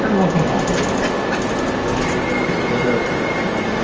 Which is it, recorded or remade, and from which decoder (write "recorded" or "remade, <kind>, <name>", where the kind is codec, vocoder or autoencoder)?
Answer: recorded